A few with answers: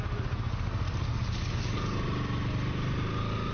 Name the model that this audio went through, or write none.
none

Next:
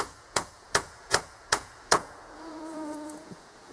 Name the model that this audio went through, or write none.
vocoder, Vocos